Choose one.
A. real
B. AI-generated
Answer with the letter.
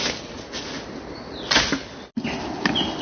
A